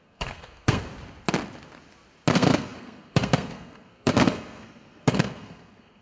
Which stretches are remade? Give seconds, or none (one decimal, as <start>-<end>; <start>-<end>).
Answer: 0.0-0.9; 2.3-6.0